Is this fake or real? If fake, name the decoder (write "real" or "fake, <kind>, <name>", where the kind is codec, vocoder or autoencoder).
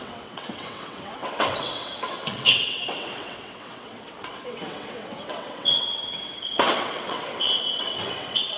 fake, vocoder, WaveNeXt